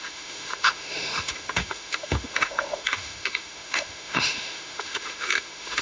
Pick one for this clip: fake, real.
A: fake